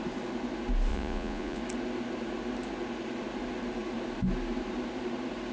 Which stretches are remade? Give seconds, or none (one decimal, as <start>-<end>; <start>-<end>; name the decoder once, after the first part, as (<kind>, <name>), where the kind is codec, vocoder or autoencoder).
0.9-1.6 (vocoder, Vocos)